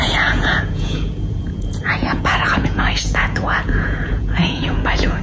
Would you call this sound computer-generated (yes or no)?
yes